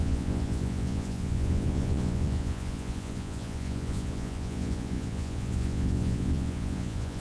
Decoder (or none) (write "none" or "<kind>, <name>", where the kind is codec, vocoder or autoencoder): vocoder, Vocos